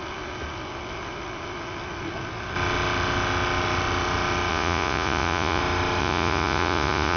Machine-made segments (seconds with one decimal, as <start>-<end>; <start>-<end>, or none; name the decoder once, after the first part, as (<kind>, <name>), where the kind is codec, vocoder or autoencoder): 4.5-5.6 (vocoder, Vocos); 6.0-7.2